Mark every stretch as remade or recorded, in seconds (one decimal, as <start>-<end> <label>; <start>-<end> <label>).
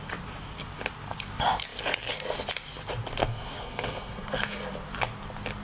0.0-3.2 recorded; 3.2-4.6 remade; 4.6-5.6 recorded